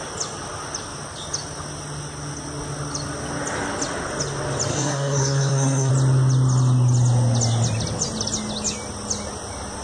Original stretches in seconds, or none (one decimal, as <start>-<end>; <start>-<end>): 0.0-4.7; 5.9-9.8